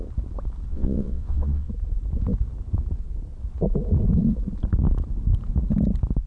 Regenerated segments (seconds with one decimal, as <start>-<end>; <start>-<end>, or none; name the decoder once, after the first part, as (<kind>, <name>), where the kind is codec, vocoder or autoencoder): 0.7-1.7 (vocoder, WaveNeXt)

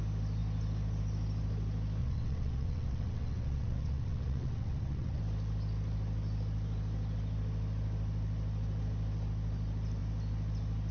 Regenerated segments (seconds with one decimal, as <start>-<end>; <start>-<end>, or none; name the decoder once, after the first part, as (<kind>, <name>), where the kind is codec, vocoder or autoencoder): 2.0-5.2 (vocoder, WaveNeXt)

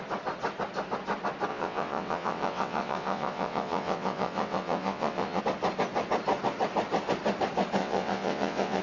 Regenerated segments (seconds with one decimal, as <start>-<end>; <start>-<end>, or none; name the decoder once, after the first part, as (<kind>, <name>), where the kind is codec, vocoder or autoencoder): 1.5-5.4 (vocoder, WaveNeXt); 7.8-8.8

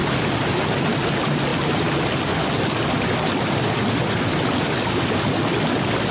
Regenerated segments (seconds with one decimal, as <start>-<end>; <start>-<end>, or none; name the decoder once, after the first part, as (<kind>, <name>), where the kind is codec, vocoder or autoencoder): none

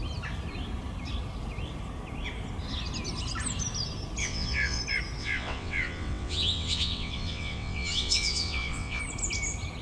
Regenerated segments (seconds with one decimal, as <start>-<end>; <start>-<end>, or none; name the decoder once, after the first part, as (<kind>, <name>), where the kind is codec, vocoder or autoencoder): 4.2-4.8 (vocoder, WaveNeXt); 5.2-9.0

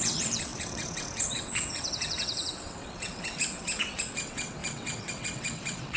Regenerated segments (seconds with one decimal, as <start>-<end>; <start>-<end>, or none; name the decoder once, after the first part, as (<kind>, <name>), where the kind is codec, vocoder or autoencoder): 0.0-6.0 (vocoder, WaveNeXt)

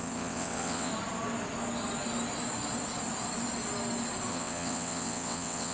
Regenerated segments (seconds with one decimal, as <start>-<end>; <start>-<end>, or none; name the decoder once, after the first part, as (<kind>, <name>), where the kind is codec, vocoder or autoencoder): 0.0-0.9 (vocoder, WaveNeXt); 4.3-5.7